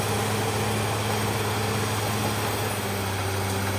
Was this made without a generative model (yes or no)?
yes